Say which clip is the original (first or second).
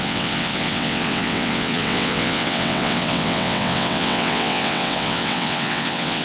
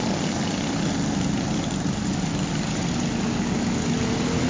second